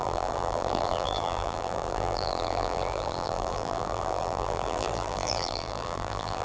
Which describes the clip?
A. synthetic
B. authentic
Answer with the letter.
A